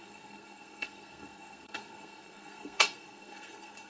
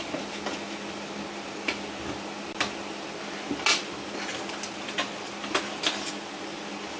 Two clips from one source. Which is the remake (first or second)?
first